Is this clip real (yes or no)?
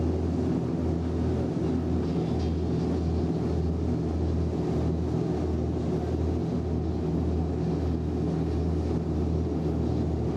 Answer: yes